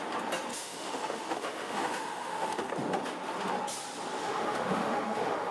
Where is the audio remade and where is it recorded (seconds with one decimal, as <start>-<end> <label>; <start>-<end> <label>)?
0.0-0.5 recorded; 0.5-2.7 remade; 2.7-4.2 recorded; 4.2-5.5 remade